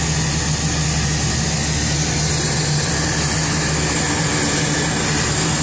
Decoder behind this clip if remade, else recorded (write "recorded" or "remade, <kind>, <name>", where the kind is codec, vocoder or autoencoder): recorded